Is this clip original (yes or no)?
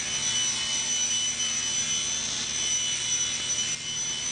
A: yes